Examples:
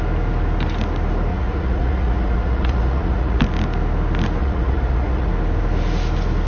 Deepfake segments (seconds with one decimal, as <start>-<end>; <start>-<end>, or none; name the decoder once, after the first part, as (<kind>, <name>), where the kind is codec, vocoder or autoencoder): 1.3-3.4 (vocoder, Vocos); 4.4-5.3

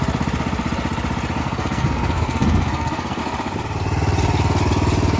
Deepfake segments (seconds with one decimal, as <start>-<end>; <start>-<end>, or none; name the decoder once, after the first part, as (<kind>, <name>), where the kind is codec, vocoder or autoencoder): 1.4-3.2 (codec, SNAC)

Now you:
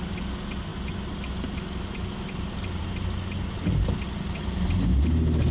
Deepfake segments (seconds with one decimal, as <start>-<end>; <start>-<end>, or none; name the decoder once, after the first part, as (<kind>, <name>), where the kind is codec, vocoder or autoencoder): none